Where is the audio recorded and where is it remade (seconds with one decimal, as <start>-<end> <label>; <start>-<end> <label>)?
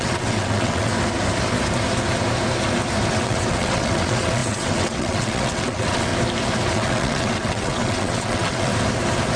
0.0-0.9 remade; 0.9-3.1 recorded; 3.1-6.1 remade; 6.1-6.7 recorded; 6.7-8.7 remade; 8.7-9.4 recorded